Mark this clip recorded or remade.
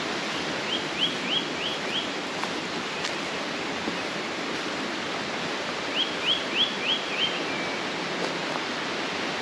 recorded